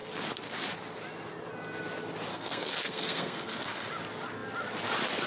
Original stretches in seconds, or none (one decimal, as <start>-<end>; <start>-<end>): 0.0-2.3; 3.9-5.3